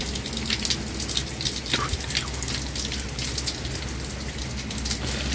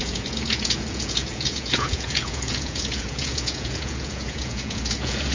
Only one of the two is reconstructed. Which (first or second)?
second